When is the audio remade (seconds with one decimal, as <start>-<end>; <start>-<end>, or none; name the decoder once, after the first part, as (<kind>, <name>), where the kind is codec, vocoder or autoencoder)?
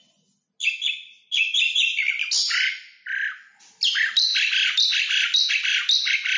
none